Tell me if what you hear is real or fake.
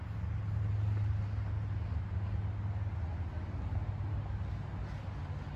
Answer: real